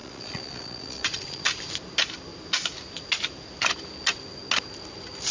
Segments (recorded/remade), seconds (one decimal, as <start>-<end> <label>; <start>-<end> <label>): 0.0-1.4 remade; 1.4-5.3 recorded